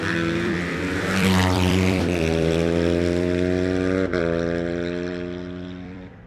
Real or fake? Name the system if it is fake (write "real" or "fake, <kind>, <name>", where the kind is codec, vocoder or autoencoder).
fake, vocoder, BigVGAN v2